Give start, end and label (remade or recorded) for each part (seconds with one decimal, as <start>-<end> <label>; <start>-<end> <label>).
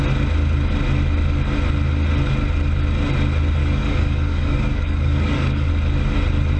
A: 0.0-3.6 recorded; 3.6-5.7 remade; 5.7-6.6 recorded